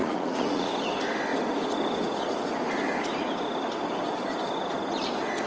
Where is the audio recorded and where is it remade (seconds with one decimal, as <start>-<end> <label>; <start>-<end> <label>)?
0.0-0.7 remade; 0.7-5.5 recorded